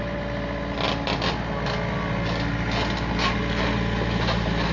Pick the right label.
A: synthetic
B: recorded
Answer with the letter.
B